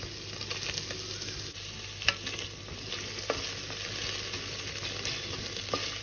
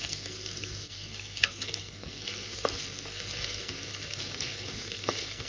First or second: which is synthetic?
second